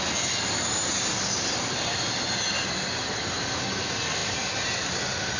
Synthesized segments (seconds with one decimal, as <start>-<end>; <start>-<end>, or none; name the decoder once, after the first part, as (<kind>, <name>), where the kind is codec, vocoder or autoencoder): none

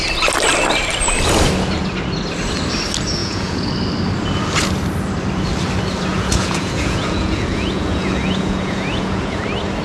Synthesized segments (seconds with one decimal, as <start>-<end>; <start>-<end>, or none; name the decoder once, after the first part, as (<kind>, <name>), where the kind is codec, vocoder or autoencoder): 3.2-3.7 (vocoder, Vocos); 6.1-9.4